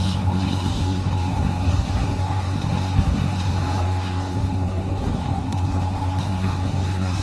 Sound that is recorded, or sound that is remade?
remade